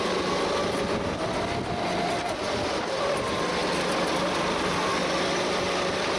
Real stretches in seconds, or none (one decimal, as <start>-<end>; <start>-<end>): 0.0-6.2